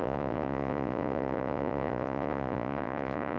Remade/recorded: remade